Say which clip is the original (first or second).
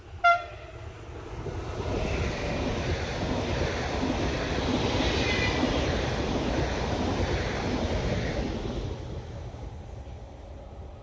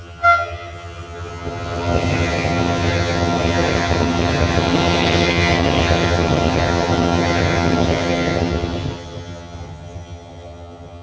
first